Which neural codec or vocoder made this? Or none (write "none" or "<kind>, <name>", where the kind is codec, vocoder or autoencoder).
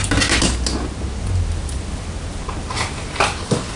none